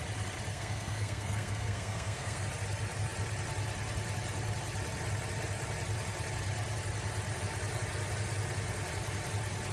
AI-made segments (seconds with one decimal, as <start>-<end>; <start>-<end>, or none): 0.5-2.4